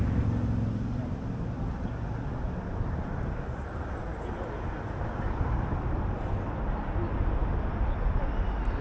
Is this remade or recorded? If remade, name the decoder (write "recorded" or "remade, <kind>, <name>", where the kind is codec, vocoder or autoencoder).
recorded